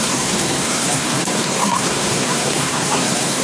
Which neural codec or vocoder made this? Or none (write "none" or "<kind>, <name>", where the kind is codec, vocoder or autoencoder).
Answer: codec, SNAC